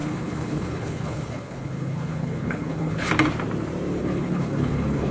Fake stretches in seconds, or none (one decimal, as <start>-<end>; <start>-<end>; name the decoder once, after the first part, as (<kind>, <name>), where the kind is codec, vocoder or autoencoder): 0.0-3.1 (codec, HILCodec); 4.0-5.1